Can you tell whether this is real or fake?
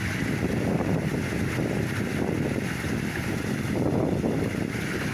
real